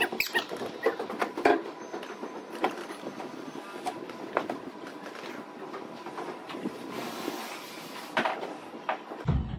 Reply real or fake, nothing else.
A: fake